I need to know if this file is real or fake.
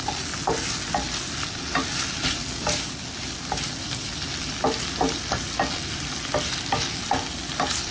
real